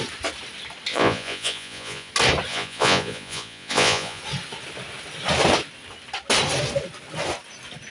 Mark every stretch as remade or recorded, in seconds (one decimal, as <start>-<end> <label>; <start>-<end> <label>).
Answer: 0.0-0.9 recorded; 0.9-2.1 remade; 2.1-2.5 recorded; 2.5-4.2 remade; 4.2-7.9 recorded